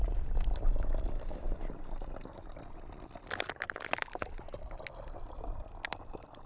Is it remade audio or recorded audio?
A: recorded